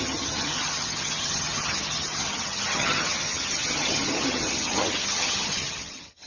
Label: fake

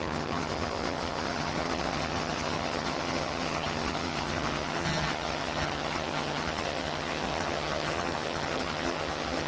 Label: fake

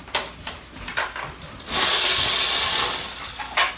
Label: real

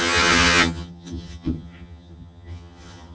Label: fake